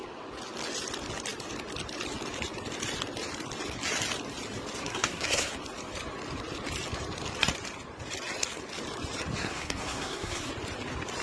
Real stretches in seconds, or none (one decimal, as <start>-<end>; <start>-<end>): 0.0-4.8; 5.5-9.4; 10.5-11.2